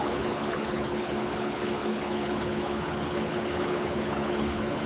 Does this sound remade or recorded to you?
remade